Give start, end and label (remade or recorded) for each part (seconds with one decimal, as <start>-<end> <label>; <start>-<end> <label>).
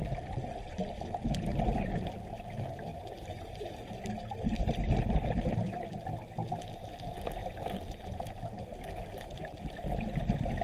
0.0-1.5 recorded; 1.5-2.0 remade; 2.0-2.9 recorded; 2.9-4.0 remade; 4.0-10.6 recorded